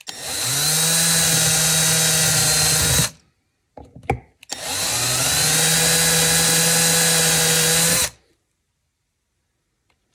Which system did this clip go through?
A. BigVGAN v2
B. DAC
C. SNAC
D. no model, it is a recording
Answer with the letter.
D